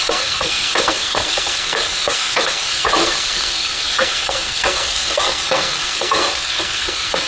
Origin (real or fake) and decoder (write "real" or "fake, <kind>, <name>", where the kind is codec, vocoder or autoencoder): fake, codec, SNAC